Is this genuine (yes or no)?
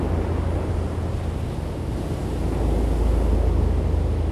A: yes